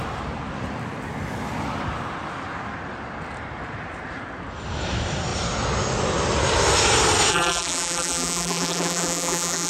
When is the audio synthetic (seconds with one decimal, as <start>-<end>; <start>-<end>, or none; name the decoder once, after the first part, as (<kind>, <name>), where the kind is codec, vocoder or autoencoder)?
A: 7.3-9.7 (vocoder, BigVGAN v2)